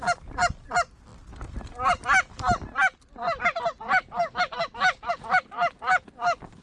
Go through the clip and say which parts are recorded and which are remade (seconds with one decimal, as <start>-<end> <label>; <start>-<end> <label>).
0.0-6.6 recorded